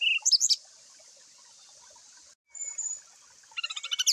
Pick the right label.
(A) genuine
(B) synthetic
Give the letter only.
A